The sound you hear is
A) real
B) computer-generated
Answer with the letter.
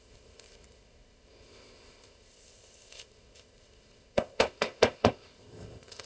B